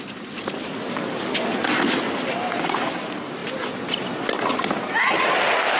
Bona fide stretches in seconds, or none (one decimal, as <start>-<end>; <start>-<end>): 0.0-5.8